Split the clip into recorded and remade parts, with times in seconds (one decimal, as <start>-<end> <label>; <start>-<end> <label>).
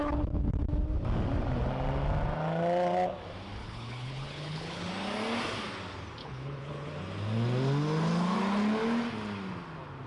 0.0-0.5 remade; 0.5-3.6 recorded; 3.6-4.9 remade; 4.9-6.2 recorded; 6.2-6.9 remade; 6.9-10.1 recorded